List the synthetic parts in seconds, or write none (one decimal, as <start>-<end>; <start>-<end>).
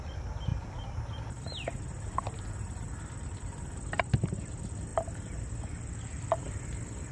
none